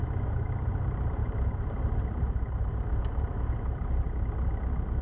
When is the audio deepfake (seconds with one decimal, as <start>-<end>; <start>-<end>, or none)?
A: 1.2-4.2